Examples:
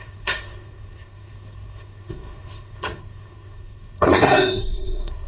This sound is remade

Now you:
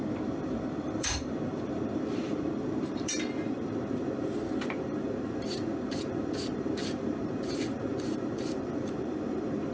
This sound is remade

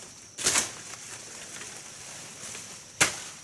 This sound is recorded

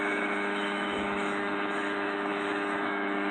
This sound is remade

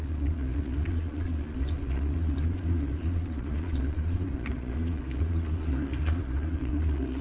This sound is remade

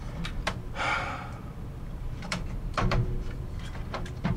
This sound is remade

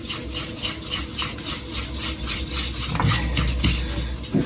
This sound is recorded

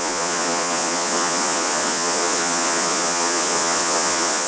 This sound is remade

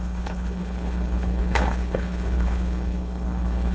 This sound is remade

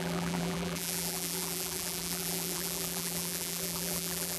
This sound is remade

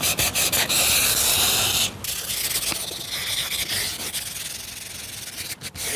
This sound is recorded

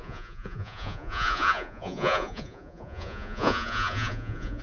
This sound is remade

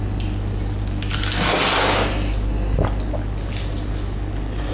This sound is recorded